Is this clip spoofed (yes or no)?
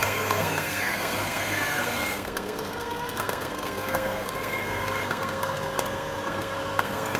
yes